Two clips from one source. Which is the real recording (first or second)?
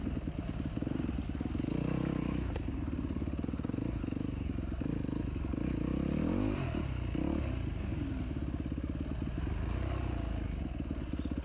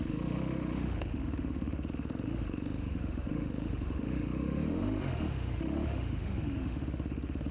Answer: first